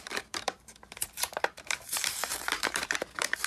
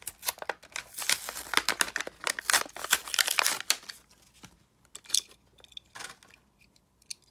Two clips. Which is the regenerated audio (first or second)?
first